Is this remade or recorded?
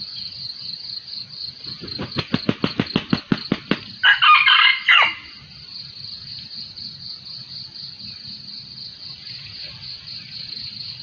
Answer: recorded